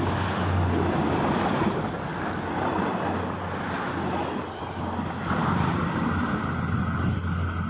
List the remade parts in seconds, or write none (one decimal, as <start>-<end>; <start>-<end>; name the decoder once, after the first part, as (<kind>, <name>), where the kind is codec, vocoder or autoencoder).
none